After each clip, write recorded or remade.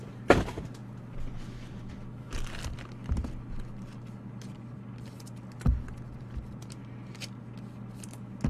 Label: recorded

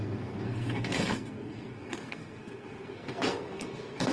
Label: remade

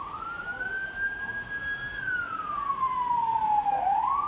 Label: recorded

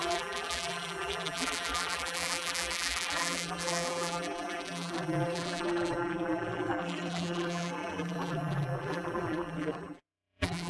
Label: remade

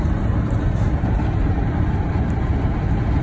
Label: remade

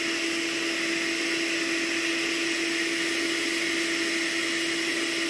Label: recorded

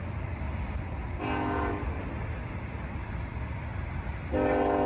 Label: recorded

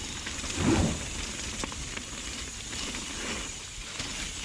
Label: recorded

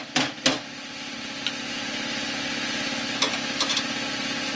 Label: recorded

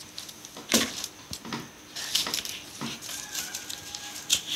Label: recorded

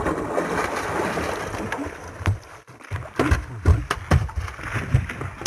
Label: recorded